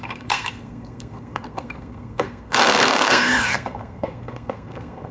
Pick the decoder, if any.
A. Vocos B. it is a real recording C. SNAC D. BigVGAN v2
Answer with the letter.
C